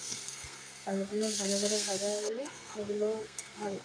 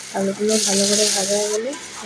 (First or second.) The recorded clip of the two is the second